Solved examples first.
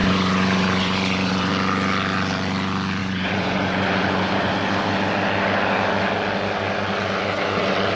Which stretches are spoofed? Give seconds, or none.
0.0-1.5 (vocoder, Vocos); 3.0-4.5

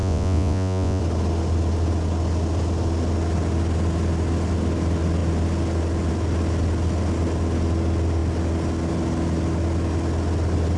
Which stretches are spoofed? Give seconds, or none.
0.0-1.0 (vocoder, Vocos)

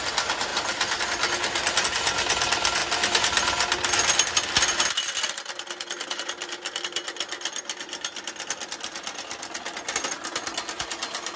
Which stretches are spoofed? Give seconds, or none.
none